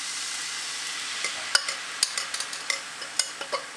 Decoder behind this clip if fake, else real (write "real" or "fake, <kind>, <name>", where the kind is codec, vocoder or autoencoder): real